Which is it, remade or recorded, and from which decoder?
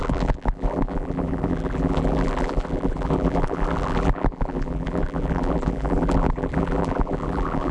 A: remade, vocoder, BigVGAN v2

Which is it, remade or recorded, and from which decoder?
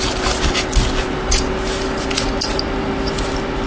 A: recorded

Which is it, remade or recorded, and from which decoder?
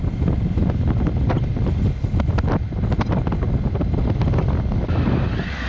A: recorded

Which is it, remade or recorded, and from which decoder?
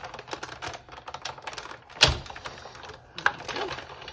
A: recorded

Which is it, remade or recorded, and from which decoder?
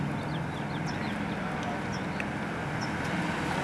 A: recorded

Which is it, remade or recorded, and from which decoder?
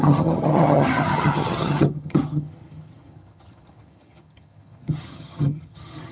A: remade, vocoder, HiFi-GAN